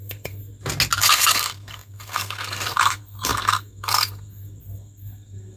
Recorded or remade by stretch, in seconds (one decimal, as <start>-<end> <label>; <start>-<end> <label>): 0.0-0.4 remade; 0.4-1.0 recorded; 1.0-5.6 remade